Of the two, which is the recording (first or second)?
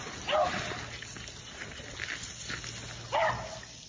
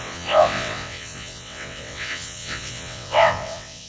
first